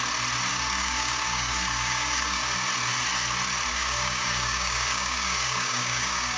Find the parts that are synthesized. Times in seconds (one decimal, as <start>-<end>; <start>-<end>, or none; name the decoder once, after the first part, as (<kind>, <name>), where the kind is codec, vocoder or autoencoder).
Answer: 0.5-2.4 (codec, DAC); 3.7-6.4